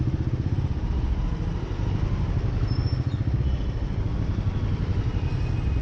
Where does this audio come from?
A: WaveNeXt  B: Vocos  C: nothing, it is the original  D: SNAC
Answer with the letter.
C